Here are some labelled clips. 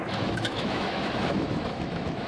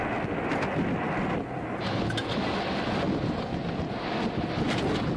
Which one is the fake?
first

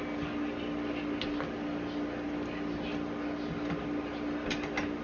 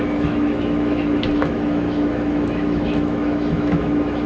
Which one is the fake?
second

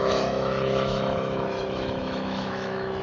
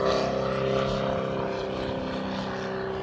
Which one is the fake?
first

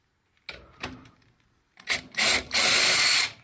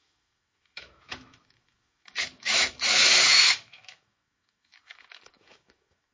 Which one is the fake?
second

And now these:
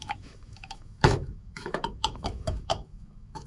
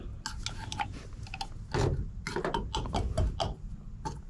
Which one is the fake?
first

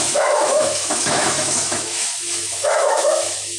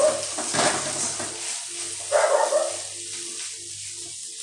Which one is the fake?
first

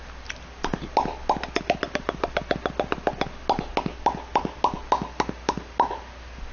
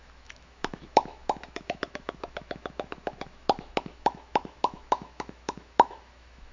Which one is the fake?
second